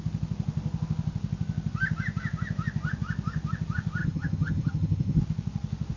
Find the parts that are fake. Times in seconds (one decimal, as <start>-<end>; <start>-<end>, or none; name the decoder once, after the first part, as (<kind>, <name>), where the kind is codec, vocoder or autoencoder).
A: 4.0-5.2 (vocoder, HiFi-GAN)